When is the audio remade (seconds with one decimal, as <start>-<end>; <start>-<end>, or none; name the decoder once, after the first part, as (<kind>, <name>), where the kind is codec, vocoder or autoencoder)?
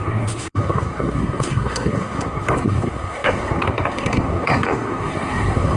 0.0-5.8 (codec, SNAC)